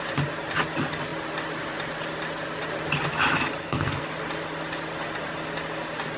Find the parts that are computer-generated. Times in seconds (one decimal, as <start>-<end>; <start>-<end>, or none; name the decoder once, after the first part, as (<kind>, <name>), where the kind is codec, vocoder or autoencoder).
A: 3.6-4.1 (codec, SNAC)